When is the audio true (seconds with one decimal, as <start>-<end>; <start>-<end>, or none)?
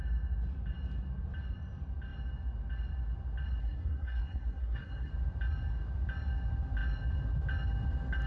0.0-3.6; 5.1-8.3